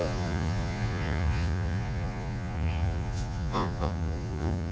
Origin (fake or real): fake